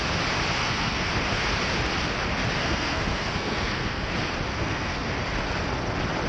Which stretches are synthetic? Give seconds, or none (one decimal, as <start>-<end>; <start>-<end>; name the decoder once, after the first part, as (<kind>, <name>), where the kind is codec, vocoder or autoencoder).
0.6-1.1 (codec, SNAC); 2.6-4.1; 4.5-5.1